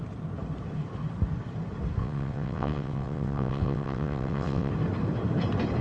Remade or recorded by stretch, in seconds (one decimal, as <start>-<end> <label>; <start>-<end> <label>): 0.0-2.0 recorded; 2.0-4.7 remade; 4.7-5.8 recorded